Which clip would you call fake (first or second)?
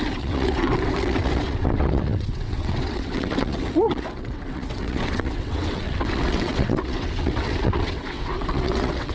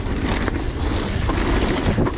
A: first